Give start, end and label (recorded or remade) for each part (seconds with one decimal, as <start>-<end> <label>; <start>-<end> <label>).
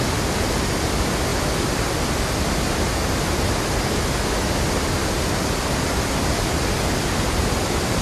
0.0-8.0 recorded